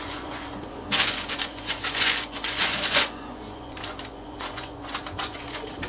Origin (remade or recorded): remade